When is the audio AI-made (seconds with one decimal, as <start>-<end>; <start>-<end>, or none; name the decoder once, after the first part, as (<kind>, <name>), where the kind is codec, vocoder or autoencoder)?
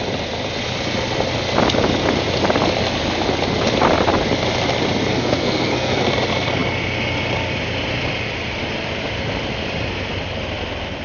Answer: 5.1-6.0 (codec, SNAC)